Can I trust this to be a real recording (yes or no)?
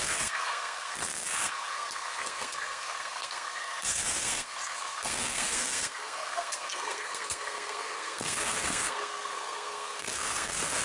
no